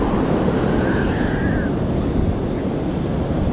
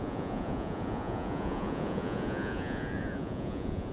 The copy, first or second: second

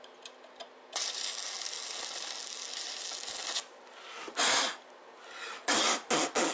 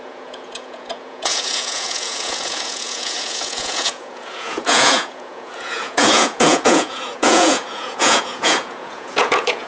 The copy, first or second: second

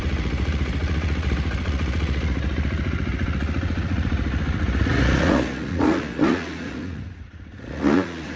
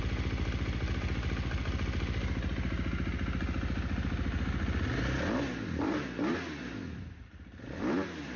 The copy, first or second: first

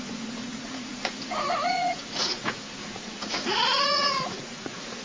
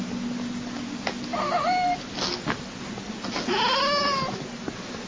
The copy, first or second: first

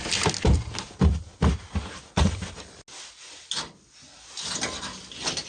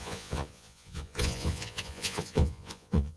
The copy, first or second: second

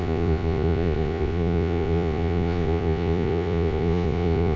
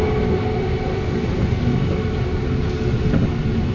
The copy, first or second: first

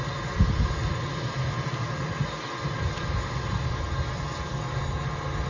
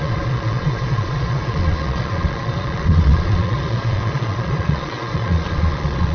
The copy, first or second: second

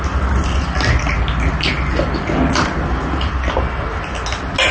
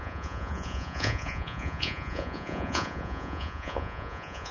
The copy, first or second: second